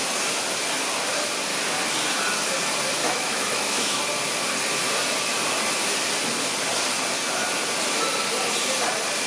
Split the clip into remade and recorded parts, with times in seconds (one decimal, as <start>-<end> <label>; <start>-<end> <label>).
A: 0.0-3.0 recorded; 3.0-4.0 remade; 4.0-9.3 recorded